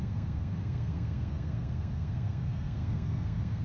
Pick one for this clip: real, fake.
fake